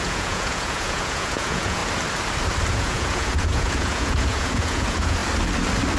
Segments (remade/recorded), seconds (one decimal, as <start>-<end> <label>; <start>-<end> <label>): 0.0-1.8 remade; 1.8-2.7 recorded; 2.7-5.2 remade; 5.2-6.0 recorded